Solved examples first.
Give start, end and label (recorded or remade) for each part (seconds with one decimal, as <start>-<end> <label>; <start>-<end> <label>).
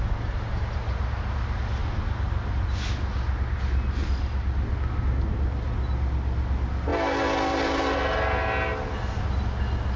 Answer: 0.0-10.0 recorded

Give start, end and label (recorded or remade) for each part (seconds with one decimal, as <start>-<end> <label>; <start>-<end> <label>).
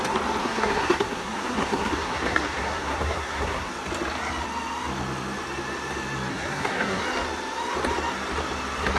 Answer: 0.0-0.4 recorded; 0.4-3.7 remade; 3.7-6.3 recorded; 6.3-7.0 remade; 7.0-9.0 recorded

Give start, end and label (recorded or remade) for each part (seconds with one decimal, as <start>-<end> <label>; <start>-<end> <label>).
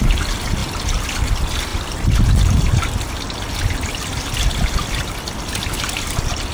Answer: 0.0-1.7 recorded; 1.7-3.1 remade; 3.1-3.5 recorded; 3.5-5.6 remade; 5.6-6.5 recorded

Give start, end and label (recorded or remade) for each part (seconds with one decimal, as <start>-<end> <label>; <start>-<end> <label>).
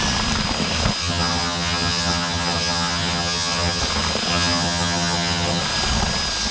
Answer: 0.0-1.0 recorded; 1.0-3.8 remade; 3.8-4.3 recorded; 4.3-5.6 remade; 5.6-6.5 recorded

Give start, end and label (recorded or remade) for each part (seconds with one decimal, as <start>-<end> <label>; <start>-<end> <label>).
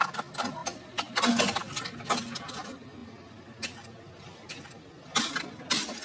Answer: 0.0-3.0 recorded; 3.0-5.4 remade; 5.4-6.0 recorded